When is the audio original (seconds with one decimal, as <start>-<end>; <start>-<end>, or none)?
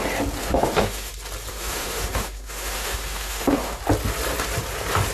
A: 0.0-0.4; 1.1-1.5; 3.8-5.1